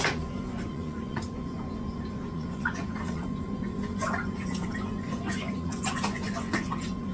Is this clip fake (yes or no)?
yes